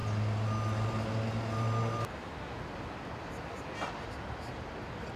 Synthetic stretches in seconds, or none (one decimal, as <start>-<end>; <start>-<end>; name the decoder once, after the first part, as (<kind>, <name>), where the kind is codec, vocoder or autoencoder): none